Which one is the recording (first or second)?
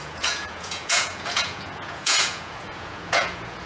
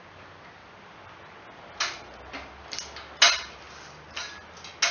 second